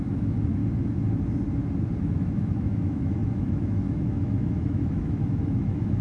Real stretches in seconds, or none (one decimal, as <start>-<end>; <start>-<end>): 0.6-2.0